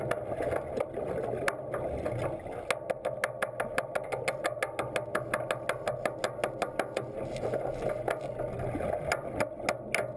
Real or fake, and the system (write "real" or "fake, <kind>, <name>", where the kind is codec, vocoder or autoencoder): real